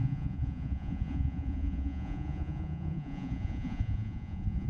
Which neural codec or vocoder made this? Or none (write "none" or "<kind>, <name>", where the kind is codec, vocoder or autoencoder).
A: vocoder, Vocos